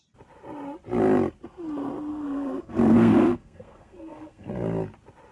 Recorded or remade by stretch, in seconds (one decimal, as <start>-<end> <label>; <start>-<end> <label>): 0.0-2.1 recorded; 2.1-4.5 remade; 4.5-5.3 recorded